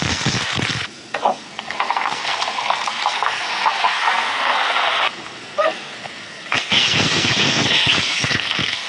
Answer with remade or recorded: remade